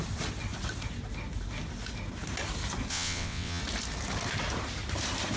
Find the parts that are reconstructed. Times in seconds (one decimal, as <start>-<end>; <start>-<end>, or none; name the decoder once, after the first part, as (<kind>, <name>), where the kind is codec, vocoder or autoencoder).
2.9-3.6 (vocoder, WaveNeXt)